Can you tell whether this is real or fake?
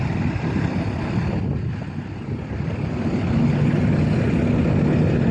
real